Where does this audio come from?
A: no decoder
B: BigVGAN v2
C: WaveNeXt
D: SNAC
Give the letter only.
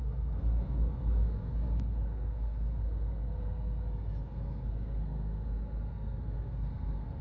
D